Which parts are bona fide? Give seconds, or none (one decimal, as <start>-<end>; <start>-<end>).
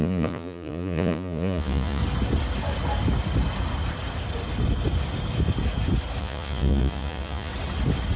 2.0-6.2; 7.5-8.2